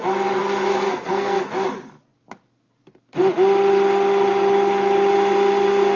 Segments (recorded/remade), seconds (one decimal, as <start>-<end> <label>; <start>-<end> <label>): 0.0-0.9 recorded; 0.9-1.5 remade; 1.5-6.0 recorded